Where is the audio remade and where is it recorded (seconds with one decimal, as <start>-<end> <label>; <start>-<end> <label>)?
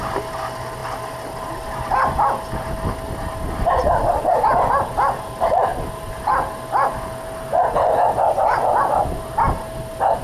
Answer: 0.0-10.2 recorded